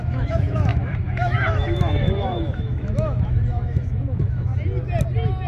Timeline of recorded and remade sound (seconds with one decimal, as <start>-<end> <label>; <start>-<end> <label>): 0.0-4.5 remade; 4.5-5.5 recorded